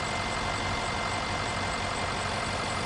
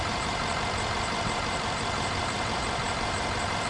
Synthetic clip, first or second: second